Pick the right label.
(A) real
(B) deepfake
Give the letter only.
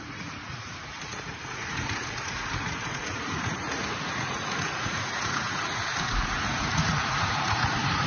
B